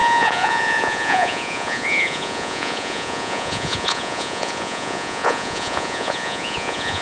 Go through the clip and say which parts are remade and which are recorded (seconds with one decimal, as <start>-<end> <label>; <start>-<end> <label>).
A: 0.0-7.0 remade